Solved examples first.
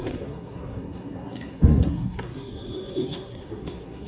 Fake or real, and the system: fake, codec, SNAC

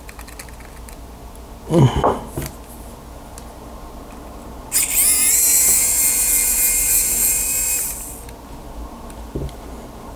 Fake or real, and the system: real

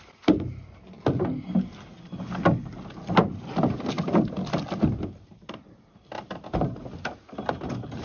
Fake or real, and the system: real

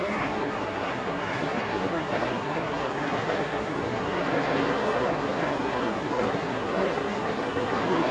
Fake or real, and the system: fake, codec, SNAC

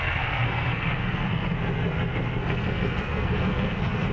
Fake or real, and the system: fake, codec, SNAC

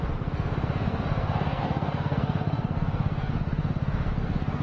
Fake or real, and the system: fake, codec, SNAC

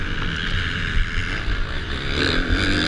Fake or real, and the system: real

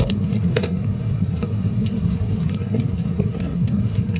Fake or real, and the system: fake, codec, SNAC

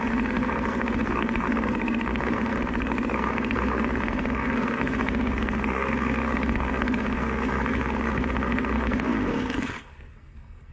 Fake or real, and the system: fake, codec, SNAC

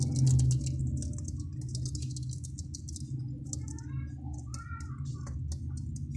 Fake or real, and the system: real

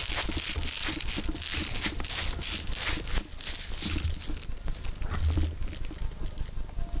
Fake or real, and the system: real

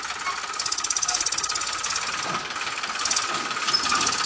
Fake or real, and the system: real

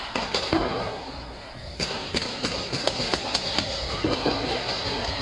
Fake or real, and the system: fake, codec, SNAC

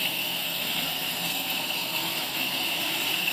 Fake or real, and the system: fake, codec, SNAC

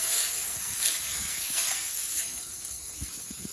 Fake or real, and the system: fake, codec, SNAC